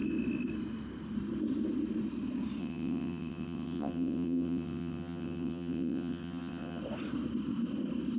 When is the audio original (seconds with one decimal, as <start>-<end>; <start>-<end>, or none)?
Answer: 0.0-2.6; 6.8-8.2